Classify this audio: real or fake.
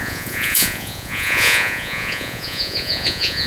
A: fake